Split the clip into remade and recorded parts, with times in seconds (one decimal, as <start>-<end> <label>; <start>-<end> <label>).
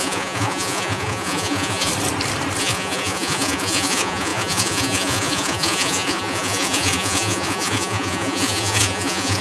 0.0-1.9 remade; 1.9-2.6 recorded; 2.6-9.4 remade